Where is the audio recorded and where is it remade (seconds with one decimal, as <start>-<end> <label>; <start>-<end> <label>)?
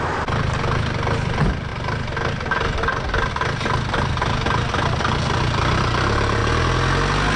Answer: 0.0-7.4 recorded